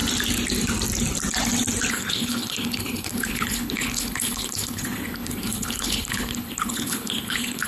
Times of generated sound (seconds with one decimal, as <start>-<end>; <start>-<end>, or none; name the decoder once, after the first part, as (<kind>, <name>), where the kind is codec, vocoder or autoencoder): 1.9-7.7 (codec, HILCodec)